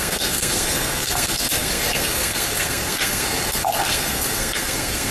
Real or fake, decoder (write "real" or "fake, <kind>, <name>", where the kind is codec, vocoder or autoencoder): fake, codec, SNAC